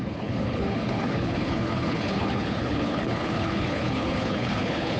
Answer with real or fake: fake